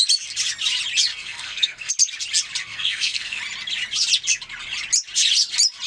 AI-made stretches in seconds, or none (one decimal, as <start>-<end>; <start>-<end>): 1.1-1.9; 2.6-3.4